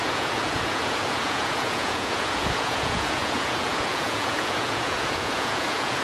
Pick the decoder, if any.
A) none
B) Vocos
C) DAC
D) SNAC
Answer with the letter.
B